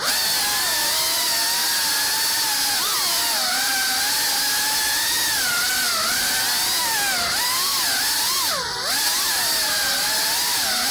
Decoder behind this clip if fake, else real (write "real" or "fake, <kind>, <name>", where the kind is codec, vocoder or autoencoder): real